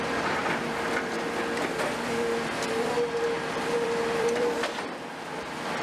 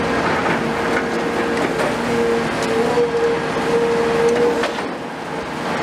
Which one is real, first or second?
second